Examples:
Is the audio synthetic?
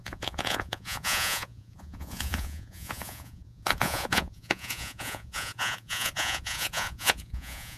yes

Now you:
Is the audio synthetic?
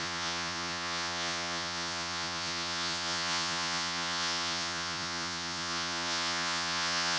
yes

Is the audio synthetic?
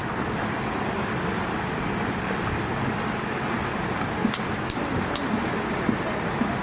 no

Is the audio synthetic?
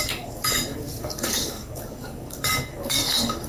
yes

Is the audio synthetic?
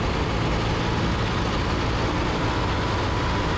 no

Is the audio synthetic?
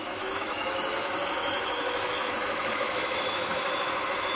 yes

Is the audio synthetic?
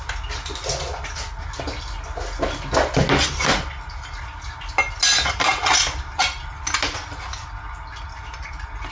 no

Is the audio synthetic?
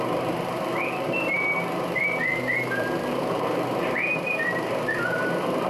yes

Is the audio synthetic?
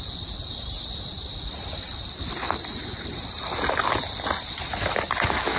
no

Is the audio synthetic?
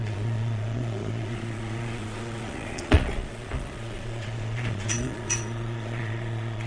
yes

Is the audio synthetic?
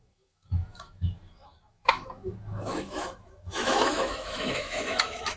yes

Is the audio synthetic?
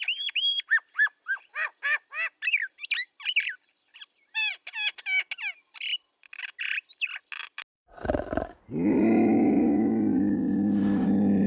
no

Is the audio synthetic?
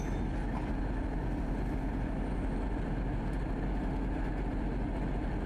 no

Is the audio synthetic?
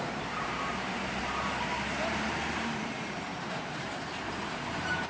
yes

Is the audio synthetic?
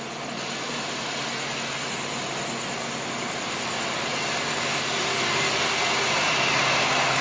no